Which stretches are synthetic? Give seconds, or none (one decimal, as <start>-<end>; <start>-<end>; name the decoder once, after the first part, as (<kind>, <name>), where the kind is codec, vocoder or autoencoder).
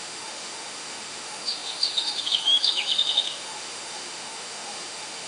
0.0-5.3 (autoencoder, DAC-VAE)